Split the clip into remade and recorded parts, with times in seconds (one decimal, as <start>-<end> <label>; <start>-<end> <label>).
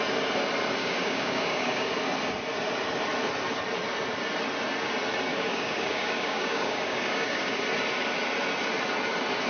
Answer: 0.0-0.8 recorded; 0.8-1.9 remade; 1.9-5.3 recorded; 5.3-7.6 remade; 7.6-9.5 recorded